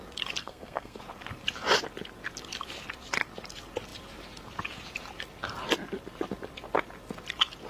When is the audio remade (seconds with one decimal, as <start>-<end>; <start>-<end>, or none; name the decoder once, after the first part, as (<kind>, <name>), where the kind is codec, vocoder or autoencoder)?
0.4-1.0 (codec, SNAC)